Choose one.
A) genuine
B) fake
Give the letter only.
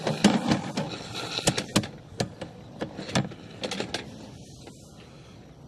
A